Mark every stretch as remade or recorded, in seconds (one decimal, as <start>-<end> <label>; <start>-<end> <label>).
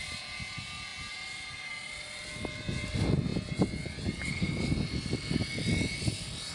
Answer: 0.0-0.9 remade; 0.9-1.7 recorded; 1.7-3.3 remade; 3.3-4.6 recorded; 4.6-6.5 remade